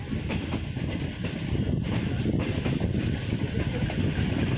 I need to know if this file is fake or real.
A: real